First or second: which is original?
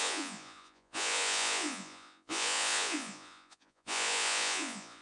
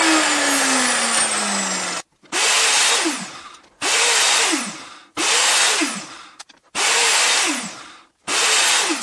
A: second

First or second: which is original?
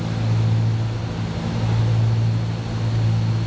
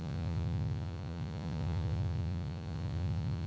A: first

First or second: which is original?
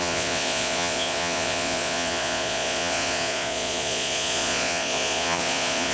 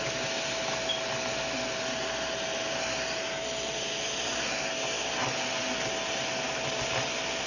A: second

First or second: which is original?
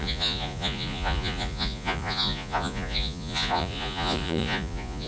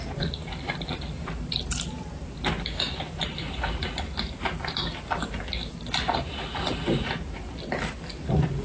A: second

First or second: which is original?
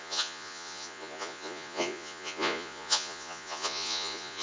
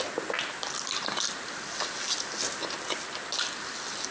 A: second